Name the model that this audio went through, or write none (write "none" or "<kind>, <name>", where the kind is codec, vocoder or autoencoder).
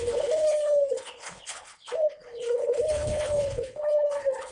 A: codec, HILCodec